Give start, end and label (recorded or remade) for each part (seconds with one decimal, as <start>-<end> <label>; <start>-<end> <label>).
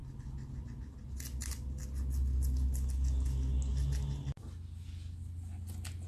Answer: 0.0-6.1 recorded